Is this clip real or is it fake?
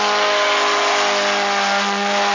real